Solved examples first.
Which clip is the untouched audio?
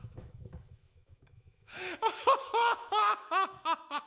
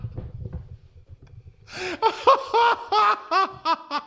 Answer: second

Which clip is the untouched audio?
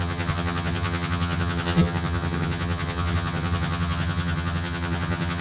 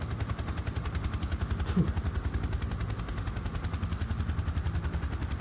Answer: second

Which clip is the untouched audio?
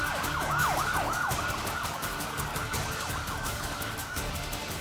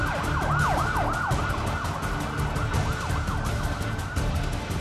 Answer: second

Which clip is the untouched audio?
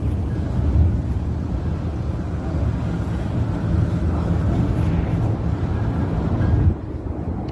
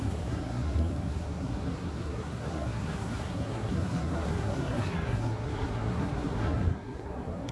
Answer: first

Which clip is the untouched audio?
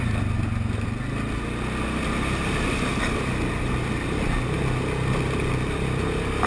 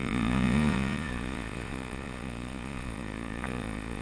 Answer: first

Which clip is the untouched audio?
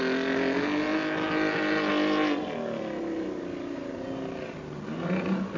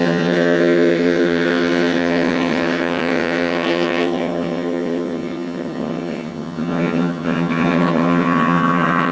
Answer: first